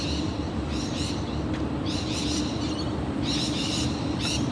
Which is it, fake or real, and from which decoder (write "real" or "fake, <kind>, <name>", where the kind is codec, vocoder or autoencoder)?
fake, vocoder, BigVGAN v2